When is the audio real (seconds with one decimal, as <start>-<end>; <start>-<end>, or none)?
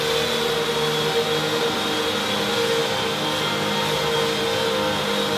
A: 0.0-5.4